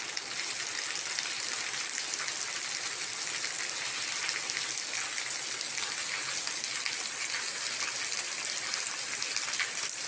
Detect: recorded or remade recorded